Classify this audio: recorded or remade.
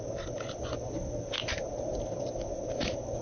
recorded